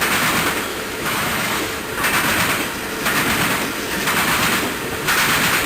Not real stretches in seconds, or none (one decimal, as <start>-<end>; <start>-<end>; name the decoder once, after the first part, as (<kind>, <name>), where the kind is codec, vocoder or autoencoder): 0.7-1.8 (autoencoder, DAC-VAE)